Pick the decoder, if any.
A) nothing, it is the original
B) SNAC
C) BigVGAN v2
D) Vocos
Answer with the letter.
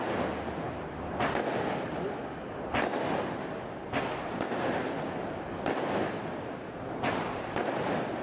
A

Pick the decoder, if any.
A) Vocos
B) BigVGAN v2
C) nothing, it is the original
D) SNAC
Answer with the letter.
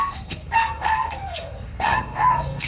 D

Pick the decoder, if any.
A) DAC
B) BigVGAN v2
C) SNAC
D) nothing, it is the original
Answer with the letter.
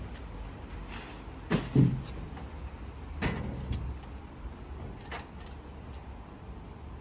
D